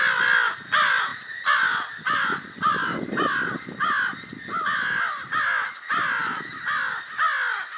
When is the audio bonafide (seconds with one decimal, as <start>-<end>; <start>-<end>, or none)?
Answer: 0.0-7.8